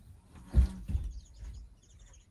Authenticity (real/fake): real